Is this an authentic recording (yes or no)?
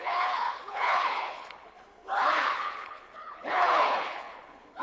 no